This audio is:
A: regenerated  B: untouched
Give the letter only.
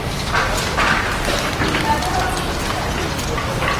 B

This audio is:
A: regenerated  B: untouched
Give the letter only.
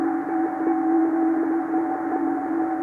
B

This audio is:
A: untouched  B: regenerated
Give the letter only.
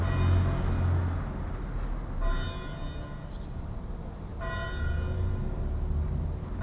A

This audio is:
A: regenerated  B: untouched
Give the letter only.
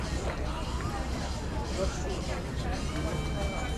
B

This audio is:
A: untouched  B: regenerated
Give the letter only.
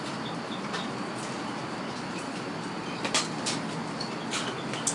A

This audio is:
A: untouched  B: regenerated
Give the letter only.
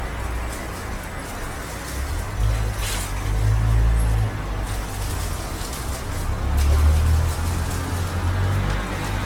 A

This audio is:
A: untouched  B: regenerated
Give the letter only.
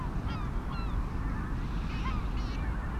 A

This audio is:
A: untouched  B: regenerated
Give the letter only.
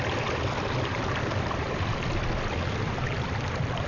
A